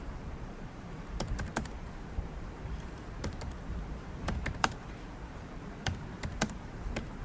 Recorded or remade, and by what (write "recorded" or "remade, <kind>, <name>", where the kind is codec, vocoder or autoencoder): remade, vocoder, BigVGAN v2